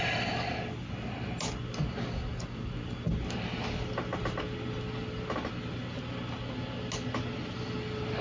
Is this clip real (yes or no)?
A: yes